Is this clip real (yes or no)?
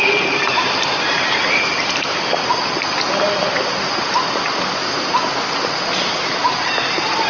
yes